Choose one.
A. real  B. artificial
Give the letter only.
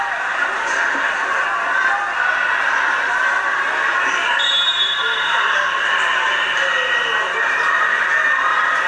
A